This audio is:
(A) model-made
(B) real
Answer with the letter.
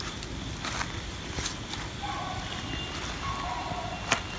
B